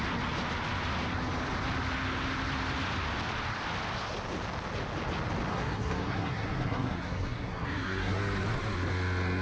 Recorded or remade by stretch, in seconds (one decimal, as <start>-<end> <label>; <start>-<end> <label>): 0.0-5.5 recorded; 5.5-8.2 remade; 8.2-9.4 recorded